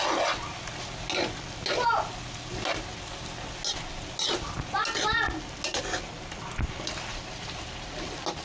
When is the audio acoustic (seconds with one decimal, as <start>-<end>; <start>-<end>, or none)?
0.0-7.1; 7.8-8.4